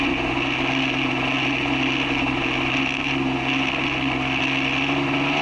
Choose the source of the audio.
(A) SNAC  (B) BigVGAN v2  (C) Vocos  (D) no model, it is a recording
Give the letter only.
D